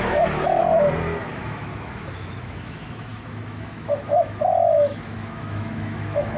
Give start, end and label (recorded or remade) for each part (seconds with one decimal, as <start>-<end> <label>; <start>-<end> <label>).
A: 0.0-0.6 remade; 0.6-1.2 recorded; 1.2-6.4 remade